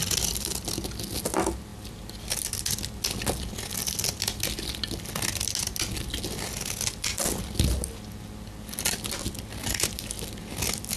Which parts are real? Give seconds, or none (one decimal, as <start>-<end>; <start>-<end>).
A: 0.0-11.0